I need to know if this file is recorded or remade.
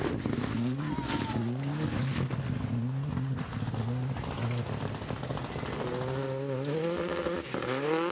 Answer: recorded